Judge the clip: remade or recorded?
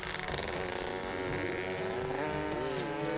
recorded